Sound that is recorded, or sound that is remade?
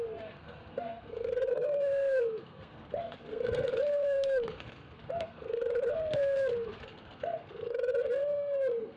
remade